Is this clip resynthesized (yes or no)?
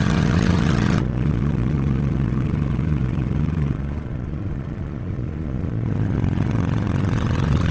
yes